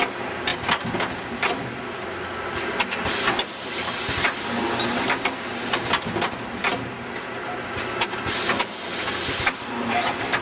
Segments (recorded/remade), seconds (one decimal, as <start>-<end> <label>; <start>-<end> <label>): 0.0-10.4 recorded